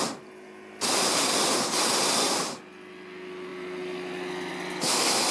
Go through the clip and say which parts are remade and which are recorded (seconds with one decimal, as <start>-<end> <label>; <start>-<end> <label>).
0.0-5.3 recorded